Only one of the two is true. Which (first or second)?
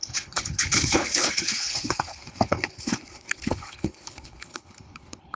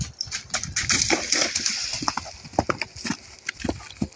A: second